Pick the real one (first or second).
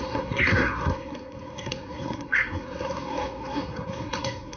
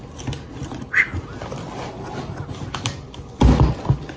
second